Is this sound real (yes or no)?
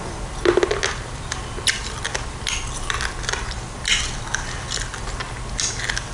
yes